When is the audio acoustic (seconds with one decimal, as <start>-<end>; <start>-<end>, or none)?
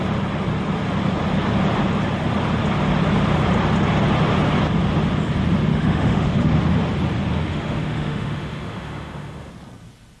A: 0.0-5.7; 6.5-7.3; 9.5-10.2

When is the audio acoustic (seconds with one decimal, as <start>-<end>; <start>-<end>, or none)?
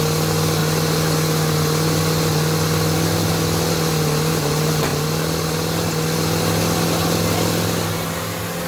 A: 0.0-8.7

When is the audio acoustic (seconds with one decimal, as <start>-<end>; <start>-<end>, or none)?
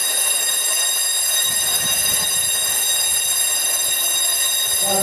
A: 0.7-1.4; 2.4-5.0